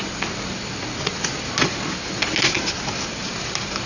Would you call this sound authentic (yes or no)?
yes